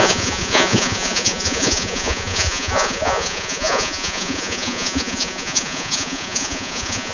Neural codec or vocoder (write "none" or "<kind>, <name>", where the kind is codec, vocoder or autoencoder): vocoder, Vocos